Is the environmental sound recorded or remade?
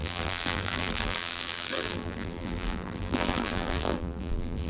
remade